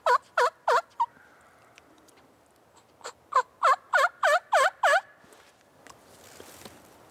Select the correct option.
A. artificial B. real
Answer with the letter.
B